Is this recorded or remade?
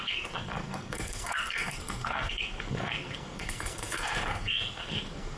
remade